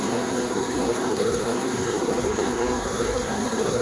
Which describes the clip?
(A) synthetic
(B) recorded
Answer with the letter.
A